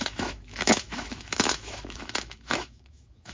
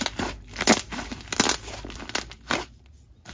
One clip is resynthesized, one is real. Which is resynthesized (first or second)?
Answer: first